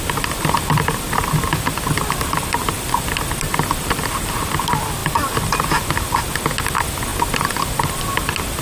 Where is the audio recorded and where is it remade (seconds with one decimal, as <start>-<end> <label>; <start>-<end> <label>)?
0.0-2.6 recorded; 2.6-4.4 remade; 4.4-5.0 recorded; 5.0-6.2 remade; 6.2-8.6 recorded